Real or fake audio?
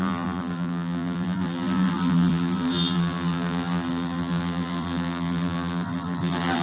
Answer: fake